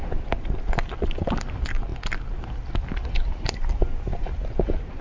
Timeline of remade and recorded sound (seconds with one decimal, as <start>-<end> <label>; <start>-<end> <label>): 0.0-5.0 recorded